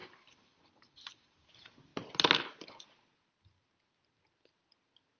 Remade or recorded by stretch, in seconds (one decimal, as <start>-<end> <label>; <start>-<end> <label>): 0.0-1.5 remade; 1.5-5.2 recorded